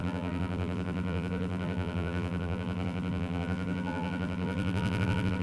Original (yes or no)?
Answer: no